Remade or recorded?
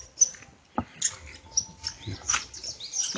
recorded